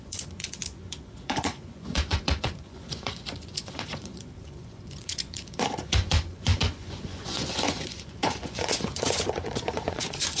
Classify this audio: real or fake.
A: fake